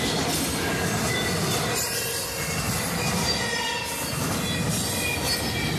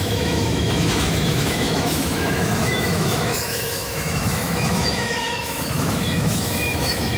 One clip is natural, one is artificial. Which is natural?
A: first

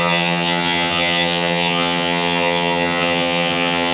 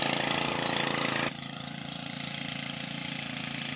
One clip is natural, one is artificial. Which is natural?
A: second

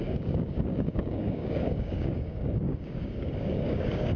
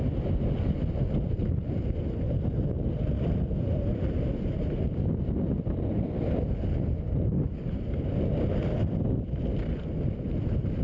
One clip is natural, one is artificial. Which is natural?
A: second